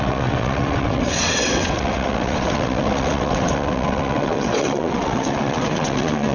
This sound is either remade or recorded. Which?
remade